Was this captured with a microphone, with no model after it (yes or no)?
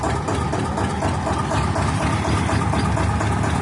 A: yes